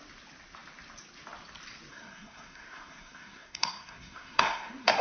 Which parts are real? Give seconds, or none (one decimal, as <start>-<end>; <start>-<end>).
0.0-1.9